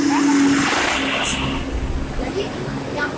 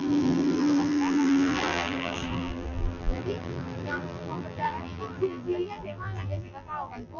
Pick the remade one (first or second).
second